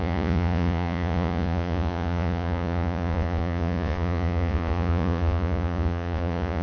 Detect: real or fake fake